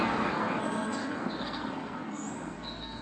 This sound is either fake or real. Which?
fake